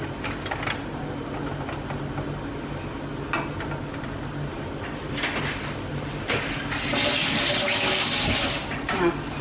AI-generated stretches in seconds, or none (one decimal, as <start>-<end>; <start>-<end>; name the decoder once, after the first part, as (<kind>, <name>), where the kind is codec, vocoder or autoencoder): 7.6-8.3 (codec, DAC)